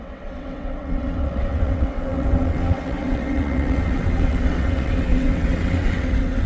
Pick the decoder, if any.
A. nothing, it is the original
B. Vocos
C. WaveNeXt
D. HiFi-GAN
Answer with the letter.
C